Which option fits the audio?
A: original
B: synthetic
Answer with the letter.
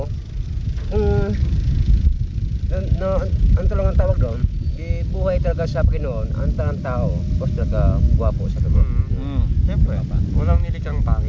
A